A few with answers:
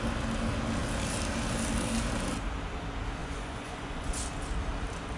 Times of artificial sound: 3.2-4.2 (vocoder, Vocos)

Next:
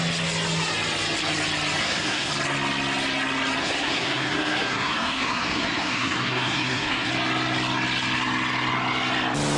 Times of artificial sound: 1.8-2.3 (codec, SNAC); 3.6-7.1

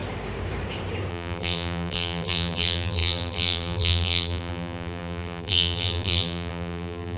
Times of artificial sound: 1.1-7.2 (vocoder, BigVGAN v2)